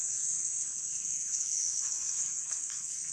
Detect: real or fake fake